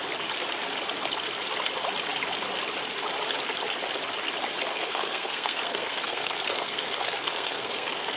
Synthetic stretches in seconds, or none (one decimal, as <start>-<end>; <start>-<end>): 4.7-8.2